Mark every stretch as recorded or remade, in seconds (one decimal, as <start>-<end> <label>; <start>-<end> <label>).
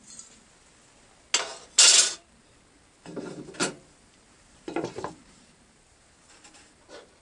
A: 0.0-3.6 recorded; 3.6-6.8 remade; 6.8-7.2 recorded